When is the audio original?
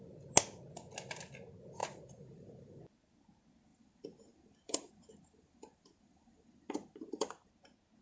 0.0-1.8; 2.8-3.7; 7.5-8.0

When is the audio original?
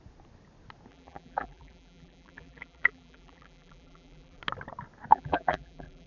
0.0-0.9; 4.4-5.1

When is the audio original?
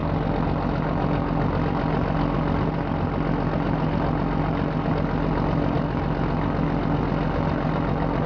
0.0-8.3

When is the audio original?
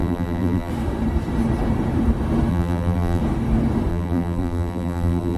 0.7-2.5; 3.2-3.9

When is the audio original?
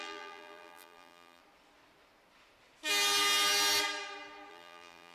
1.4-4.5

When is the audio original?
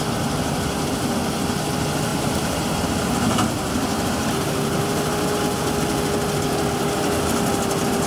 0.0-2.1; 4.4-8.1